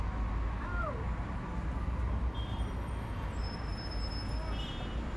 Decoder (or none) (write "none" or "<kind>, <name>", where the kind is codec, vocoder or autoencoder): none